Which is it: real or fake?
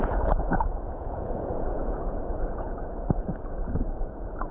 fake